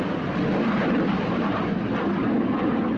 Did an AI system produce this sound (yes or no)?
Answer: no